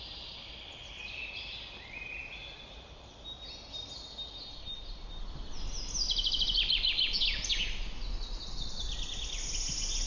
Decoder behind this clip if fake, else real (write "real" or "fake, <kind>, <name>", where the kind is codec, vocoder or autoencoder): real